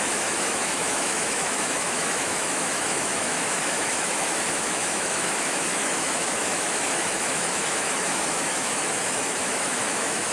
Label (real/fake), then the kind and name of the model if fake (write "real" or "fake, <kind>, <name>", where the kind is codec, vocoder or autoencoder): fake, autoencoder, DAC-VAE